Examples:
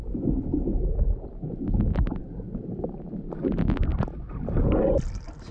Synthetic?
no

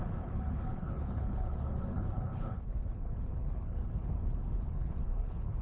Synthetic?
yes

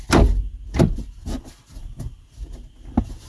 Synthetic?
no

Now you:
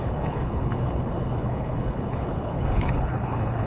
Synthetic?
yes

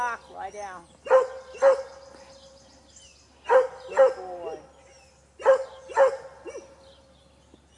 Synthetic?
no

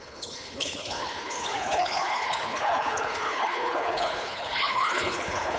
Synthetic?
yes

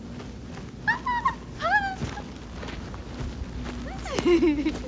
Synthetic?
no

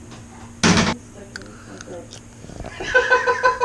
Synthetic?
no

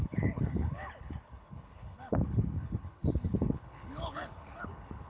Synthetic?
yes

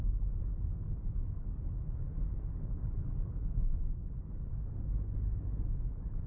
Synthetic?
yes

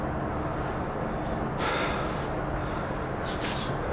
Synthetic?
no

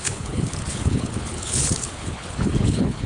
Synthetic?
yes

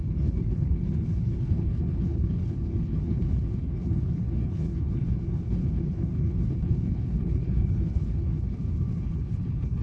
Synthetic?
yes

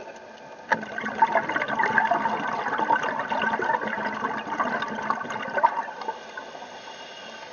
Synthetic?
no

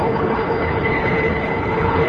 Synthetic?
yes